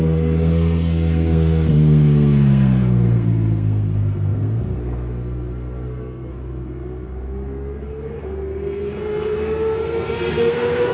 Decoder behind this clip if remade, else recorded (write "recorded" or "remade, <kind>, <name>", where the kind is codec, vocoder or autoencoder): remade, codec, SNAC